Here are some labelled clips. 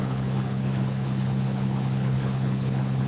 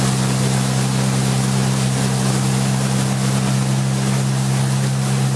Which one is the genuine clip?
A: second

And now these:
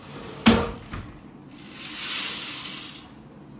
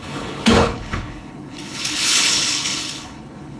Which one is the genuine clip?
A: first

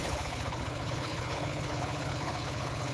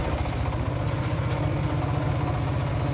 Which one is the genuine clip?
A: second